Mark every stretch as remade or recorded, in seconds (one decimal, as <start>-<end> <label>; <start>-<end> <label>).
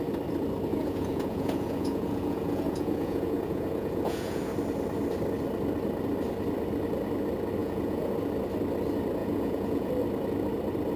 0.0-0.7 recorded; 0.7-4.5 remade; 4.5-7.6 recorded; 7.6-8.1 remade; 8.1-9.2 recorded; 9.2-9.9 remade; 9.9-11.0 recorded